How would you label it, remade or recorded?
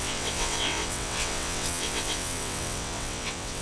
remade